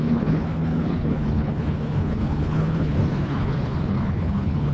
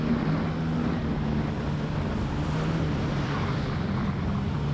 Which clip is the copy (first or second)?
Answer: first